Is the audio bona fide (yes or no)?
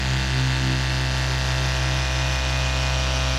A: yes